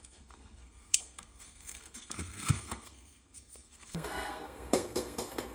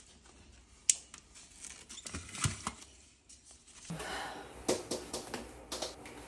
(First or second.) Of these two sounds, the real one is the second